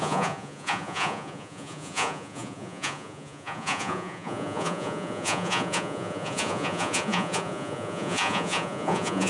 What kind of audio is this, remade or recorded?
remade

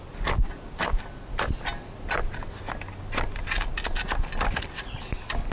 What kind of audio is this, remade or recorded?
recorded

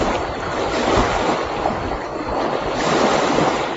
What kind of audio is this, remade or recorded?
recorded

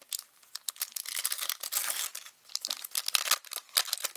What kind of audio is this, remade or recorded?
recorded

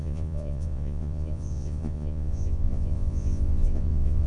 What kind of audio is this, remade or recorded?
remade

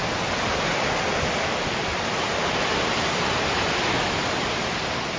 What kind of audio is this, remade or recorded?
recorded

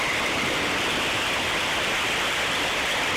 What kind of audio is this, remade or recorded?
remade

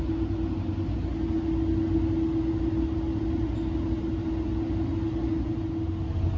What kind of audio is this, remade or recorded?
recorded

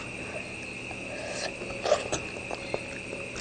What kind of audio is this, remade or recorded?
recorded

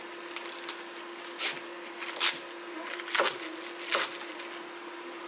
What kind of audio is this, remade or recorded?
recorded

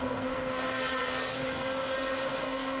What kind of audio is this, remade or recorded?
remade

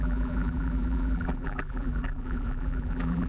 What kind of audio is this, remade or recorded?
remade